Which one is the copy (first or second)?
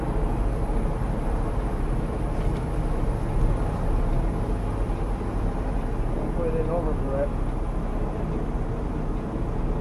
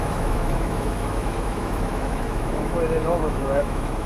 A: second